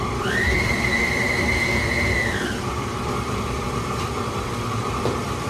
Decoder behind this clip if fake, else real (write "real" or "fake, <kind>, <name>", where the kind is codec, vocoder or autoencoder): fake, vocoder, BigVGAN v2